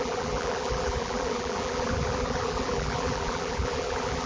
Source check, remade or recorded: remade